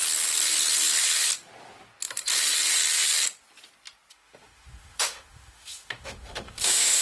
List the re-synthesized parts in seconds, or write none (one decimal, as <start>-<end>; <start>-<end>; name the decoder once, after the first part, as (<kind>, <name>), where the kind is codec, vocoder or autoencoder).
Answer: 4.1-7.0 (autoencoder, DAC-VAE)